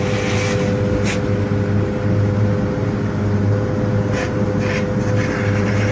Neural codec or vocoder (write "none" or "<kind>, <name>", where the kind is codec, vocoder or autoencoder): none